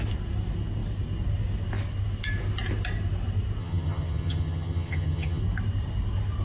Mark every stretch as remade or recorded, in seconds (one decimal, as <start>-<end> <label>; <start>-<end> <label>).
0.0-3.6 recorded; 3.6-5.4 remade; 5.4-6.4 recorded